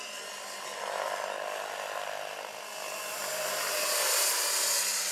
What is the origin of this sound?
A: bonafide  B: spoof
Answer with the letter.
A